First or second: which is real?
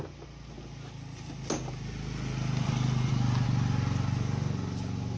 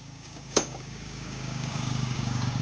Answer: first